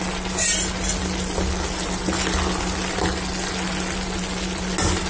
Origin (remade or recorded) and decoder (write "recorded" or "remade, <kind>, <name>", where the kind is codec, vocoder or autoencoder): recorded